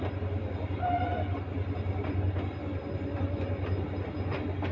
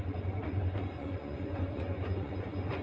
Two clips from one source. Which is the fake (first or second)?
second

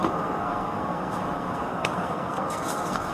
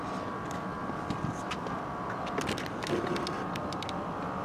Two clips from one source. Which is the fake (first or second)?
first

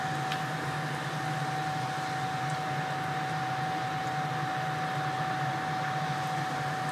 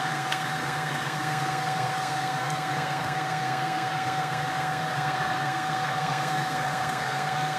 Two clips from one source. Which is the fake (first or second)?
second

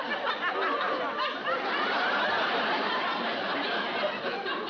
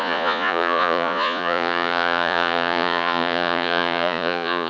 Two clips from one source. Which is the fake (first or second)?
second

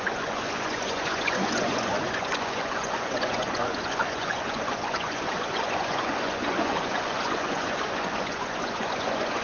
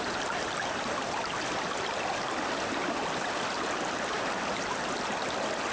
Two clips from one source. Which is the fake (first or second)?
first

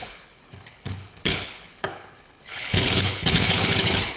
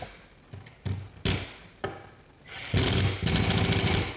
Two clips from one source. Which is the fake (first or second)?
first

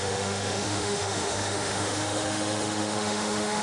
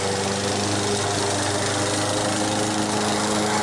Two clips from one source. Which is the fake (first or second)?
first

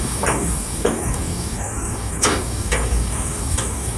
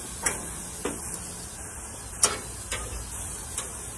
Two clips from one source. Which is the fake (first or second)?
first